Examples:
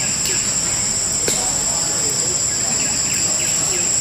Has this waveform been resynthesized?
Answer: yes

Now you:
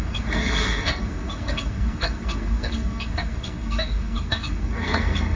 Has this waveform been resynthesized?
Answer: yes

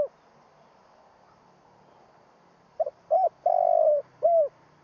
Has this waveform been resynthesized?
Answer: no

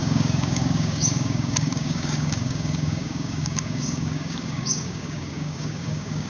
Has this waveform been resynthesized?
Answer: yes